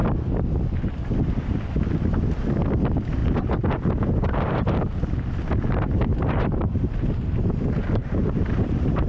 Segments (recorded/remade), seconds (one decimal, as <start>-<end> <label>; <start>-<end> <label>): 0.0-3.2 recorded; 3.2-4.8 remade; 4.8-6.1 recorded; 6.1-9.1 remade